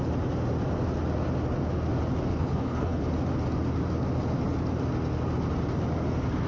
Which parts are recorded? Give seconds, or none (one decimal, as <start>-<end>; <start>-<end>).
0.0-2.3; 3.0-6.5